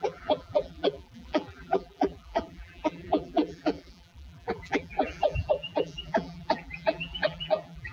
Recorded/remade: remade